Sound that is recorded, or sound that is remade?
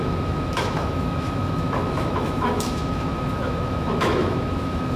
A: remade